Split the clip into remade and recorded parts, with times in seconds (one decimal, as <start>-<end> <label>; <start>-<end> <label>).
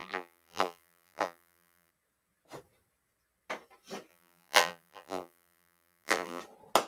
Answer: 0.0-1.9 remade; 1.9-4.1 recorded; 4.1-6.4 remade; 6.4-6.9 recorded